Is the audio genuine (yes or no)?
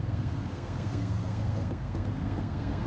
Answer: no